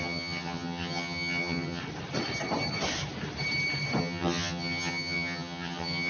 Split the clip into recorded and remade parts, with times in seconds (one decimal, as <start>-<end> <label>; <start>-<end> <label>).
0.0-1.8 remade; 1.8-4.0 recorded; 4.0-6.1 remade